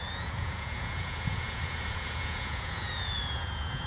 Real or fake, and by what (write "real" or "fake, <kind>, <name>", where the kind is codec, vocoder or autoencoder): fake, vocoder, Vocos